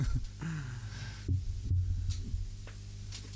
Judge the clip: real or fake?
real